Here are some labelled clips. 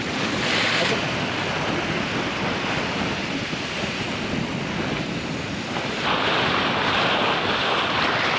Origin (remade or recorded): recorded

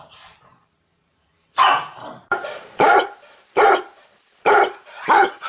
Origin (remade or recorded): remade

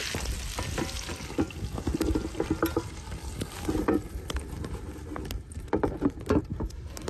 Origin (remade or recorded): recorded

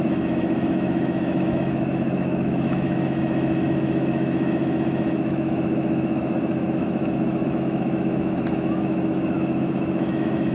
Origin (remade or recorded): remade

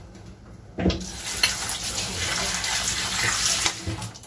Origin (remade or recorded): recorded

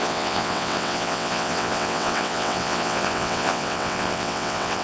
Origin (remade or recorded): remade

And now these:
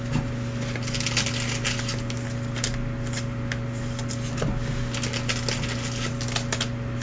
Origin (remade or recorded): recorded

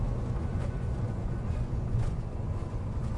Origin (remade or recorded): remade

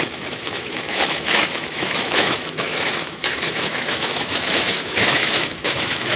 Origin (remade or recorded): remade